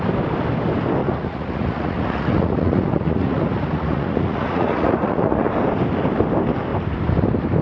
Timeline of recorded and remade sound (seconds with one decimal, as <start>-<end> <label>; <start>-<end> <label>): 0.0-1.0 recorded; 1.0-5.5 remade; 5.5-7.6 recorded